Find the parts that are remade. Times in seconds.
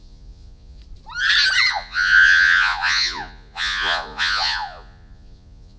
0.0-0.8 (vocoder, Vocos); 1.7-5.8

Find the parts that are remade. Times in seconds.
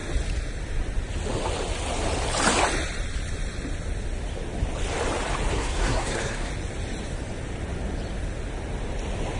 5.5-6.5 (codec, SNAC)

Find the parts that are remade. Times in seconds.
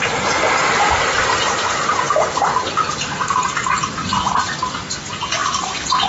none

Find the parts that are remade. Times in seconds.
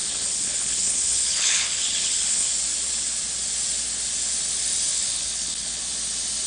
0.0-2.5 (codec, HILCodec); 4.9-5.8